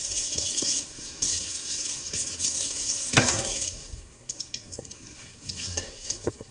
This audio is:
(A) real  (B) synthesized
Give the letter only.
B